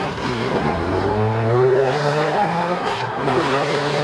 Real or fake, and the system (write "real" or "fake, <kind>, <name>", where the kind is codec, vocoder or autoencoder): fake, codec, SNAC